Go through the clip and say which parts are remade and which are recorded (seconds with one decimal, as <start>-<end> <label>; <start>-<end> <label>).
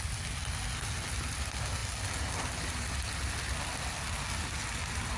0.0-5.2 recorded